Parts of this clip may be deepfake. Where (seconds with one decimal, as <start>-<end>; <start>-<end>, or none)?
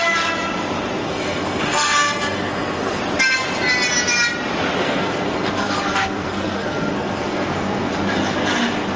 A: 1.0-3.0; 4.8-7.9